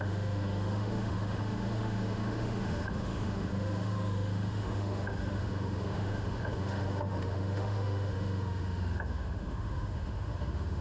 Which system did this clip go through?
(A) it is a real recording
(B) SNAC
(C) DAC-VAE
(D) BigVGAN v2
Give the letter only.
C